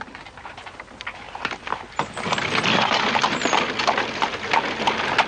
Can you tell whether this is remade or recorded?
recorded